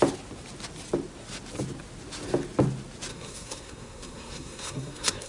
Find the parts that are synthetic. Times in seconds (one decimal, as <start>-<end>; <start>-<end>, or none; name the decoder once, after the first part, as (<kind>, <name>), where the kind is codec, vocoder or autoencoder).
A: 3.1-5.3 (codec, SNAC)